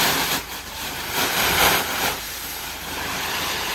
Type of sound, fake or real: fake